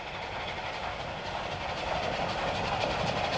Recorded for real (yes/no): yes